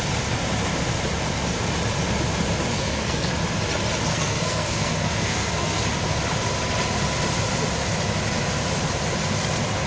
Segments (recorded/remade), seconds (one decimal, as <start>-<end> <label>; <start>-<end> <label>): 0.0-2.7 recorded; 2.7-3.3 remade; 3.3-4.1 recorded; 4.1-5.8 remade; 5.8-9.9 recorded

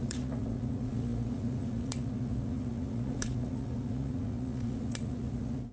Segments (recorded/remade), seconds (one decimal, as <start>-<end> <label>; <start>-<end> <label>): 0.0-5.7 remade

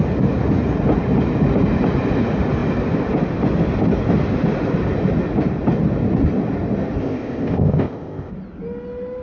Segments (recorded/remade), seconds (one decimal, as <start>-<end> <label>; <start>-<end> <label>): 0.0-7.0 recorded; 7.0-8.3 remade; 8.3-9.2 recorded

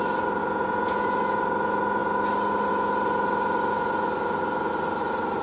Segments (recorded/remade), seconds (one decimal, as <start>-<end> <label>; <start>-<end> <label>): 0.0-0.4 recorded; 0.4-1.2 remade; 1.2-5.4 recorded

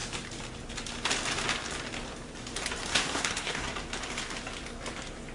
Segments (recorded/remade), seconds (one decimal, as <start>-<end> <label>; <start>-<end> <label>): 0.0-2.9 recorded; 2.9-3.7 remade; 3.7-5.3 recorded

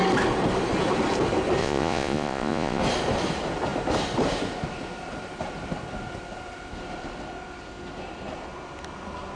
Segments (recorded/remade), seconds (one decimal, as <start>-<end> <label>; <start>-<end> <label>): 0.0-1.6 recorded; 1.6-2.8 remade; 2.8-9.4 recorded

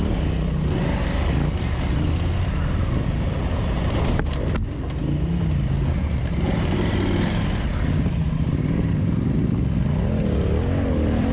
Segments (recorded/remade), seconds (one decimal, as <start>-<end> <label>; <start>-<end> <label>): 0.0-8.2 recorded; 8.2-9.0 remade; 9.0-11.3 recorded